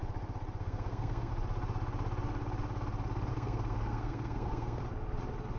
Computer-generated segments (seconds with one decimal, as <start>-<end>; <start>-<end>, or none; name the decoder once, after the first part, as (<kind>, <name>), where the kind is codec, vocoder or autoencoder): 0.6-1.3 (codec, SNAC); 3.3-4.8